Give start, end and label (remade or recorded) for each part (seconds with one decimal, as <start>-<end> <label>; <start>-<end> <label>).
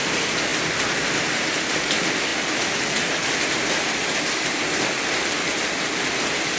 0.0-6.6 recorded